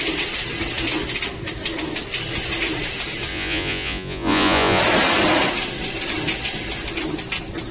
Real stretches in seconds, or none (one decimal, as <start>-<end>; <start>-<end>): 0.0-3.3; 4.8-7.7